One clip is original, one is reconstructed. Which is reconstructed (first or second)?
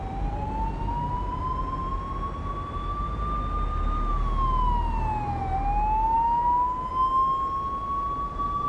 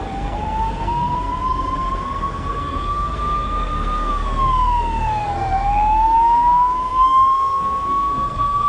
second